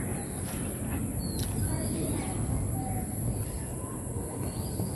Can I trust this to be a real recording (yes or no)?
yes